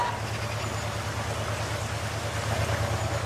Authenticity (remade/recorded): recorded